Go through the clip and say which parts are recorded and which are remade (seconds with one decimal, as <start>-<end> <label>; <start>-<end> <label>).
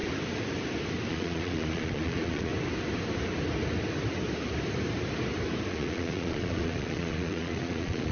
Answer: 0.0-1.1 recorded; 1.1-2.5 remade; 2.5-5.7 recorded; 5.7-8.1 remade